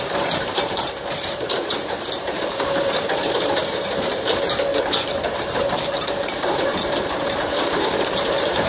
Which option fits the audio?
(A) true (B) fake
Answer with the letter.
B